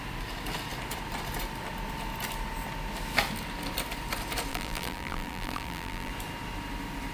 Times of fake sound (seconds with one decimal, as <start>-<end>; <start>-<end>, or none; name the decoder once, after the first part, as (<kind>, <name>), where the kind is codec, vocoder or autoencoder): 4.5-6.1 (vocoder, BigVGAN v2)